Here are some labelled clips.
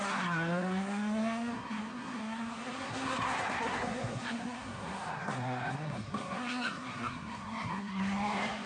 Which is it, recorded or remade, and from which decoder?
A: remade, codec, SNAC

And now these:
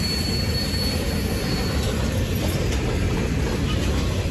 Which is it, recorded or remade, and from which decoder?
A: recorded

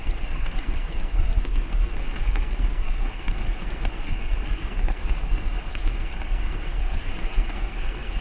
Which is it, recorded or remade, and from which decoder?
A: remade, codec, SNAC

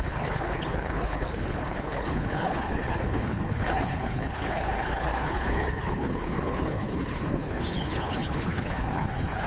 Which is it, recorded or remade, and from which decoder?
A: remade, codec, HILCodec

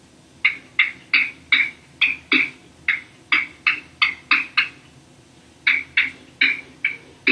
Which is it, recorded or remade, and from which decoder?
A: recorded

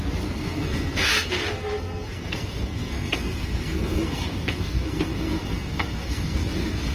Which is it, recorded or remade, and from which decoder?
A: remade, codec, SNAC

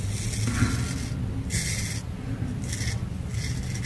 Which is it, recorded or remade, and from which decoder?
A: recorded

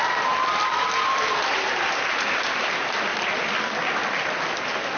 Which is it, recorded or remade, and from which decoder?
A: recorded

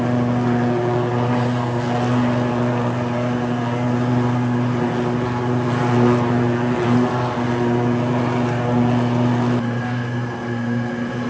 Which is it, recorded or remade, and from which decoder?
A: recorded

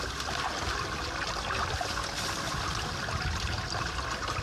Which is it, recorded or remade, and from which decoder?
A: recorded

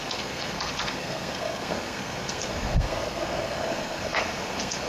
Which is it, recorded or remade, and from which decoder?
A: remade, codec, SNAC